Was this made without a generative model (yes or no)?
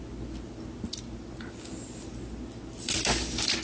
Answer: yes